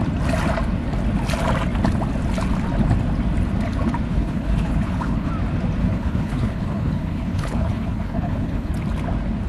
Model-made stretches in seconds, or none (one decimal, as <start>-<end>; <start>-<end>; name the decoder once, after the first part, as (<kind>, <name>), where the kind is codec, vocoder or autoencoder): 4.1-5.3 (codec, HILCodec); 5.8-8.7